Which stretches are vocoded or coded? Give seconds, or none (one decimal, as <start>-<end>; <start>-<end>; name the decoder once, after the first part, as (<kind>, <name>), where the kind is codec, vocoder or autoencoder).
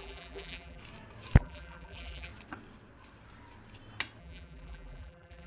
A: 0.0-0.8 (vocoder, BigVGAN v2); 1.4-2.3; 4.2-5.5